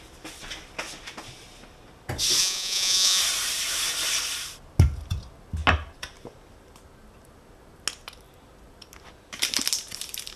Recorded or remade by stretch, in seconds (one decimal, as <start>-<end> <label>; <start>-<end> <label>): 0.0-2.4 recorded; 2.4-3.2 remade; 3.2-10.4 recorded